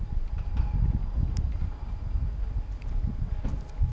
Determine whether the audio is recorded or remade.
recorded